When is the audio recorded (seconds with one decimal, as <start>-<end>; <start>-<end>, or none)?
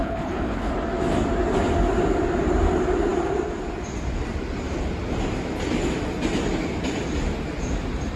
0.7-8.2